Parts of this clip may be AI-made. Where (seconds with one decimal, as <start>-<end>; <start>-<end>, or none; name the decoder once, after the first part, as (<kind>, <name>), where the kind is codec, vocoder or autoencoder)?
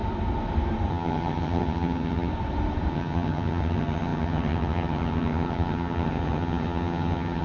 0.9-2.3 (vocoder, HiFi-GAN); 2.9-7.4